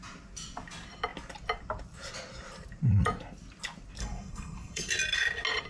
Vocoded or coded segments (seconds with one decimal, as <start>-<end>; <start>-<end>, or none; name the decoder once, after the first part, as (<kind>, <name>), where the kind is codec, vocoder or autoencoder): 4.0-4.9 (codec, SNAC)